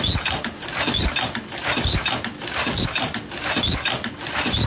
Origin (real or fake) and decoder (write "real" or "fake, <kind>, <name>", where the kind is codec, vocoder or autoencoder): real